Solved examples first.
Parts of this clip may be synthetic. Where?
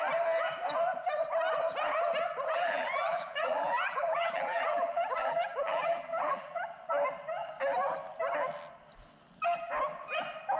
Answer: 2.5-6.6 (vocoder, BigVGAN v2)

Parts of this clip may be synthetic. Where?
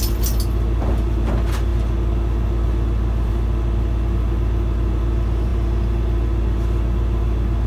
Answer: none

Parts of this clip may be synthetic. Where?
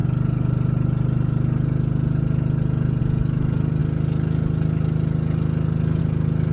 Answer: none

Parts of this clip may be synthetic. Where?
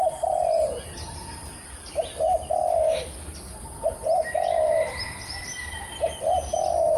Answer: 0.0-1.2 (vocoder, BigVGAN v2); 5.4-7.0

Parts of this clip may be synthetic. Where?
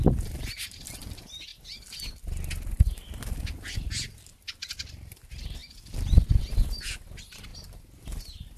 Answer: 0.0-1.5 (vocoder, BigVGAN v2); 3.1-5.6; 6.4-8.6